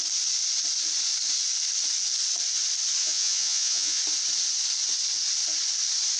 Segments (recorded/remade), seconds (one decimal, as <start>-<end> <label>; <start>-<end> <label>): 0.0-3.0 recorded; 3.0-4.0 remade; 4.0-6.2 recorded